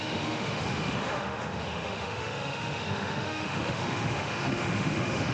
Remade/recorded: remade